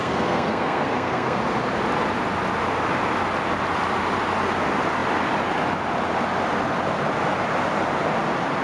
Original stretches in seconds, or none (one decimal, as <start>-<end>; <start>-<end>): 1.4-8.6

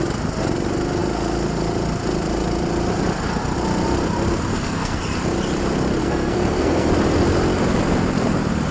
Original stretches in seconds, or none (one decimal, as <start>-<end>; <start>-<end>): 0.0-4.5; 5.0-6.0; 6.9-8.7

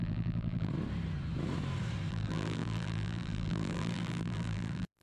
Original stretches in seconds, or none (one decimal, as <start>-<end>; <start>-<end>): 0.7-2.1

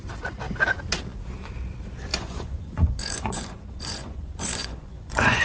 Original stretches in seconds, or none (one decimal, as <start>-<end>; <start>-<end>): 0.0-2.1

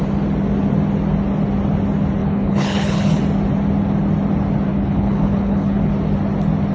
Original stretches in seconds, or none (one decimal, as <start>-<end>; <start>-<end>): 0.0-2.2; 3.2-4.7; 5.9-6.7

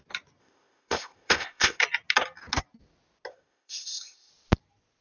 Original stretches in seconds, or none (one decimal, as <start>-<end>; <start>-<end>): 0.0-0.4; 1.8-3.3; 4.3-5.0